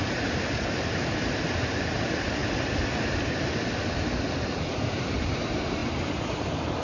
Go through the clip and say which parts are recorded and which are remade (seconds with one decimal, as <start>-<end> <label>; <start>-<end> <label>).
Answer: 0.0-2.4 remade; 2.4-4.9 recorded; 4.9-6.8 remade